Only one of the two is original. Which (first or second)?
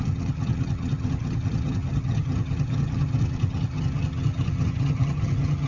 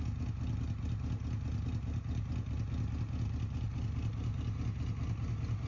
second